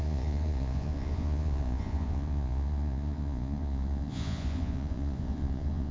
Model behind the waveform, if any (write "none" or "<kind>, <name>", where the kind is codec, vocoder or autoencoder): vocoder, Vocos